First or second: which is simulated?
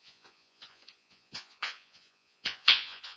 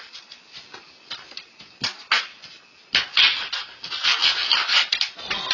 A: first